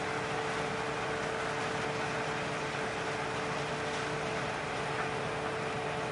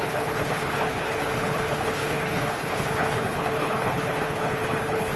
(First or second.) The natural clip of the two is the first